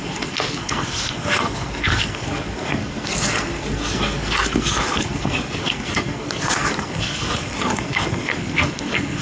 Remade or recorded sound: remade